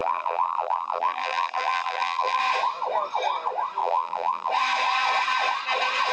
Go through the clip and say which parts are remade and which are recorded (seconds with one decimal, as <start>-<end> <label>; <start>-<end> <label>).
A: 0.0-2.4 remade; 2.4-3.8 recorded; 3.8-4.5 remade; 4.5-6.1 recorded